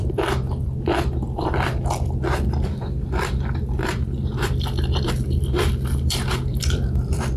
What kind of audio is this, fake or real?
fake